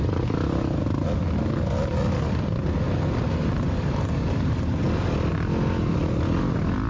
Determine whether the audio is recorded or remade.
recorded